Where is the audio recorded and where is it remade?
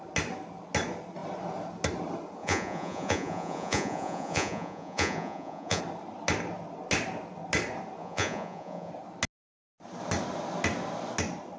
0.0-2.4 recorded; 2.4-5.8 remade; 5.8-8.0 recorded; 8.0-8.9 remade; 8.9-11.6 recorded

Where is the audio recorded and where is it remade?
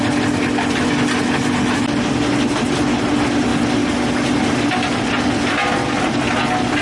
0.0-6.8 recorded